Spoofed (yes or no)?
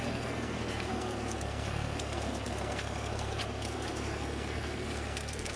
yes